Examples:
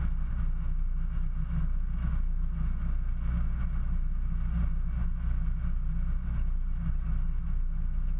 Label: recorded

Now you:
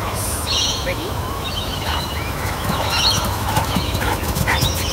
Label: remade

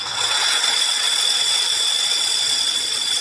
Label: remade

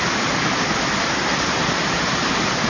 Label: recorded